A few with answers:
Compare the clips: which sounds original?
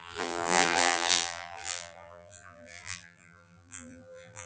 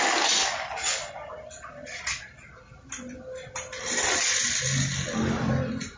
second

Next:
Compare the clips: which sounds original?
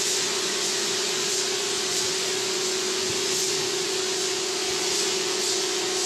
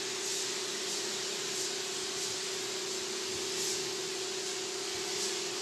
second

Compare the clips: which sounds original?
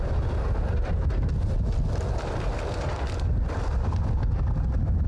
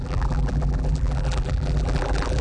first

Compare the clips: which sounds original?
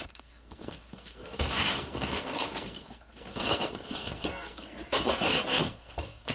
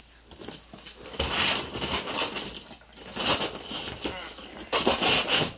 second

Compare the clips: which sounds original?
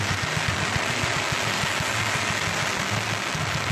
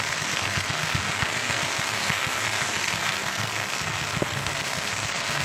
first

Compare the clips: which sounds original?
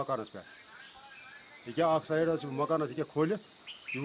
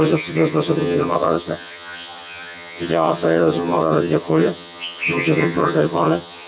first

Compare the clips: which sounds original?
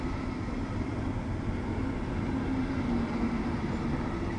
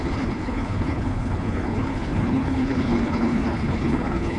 first